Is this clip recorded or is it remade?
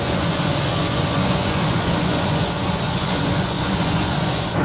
remade